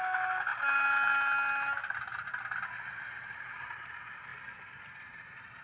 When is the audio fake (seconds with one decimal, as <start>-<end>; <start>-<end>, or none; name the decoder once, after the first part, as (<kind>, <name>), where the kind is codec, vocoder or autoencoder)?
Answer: 4.3-4.8 (vocoder, BigVGAN v2)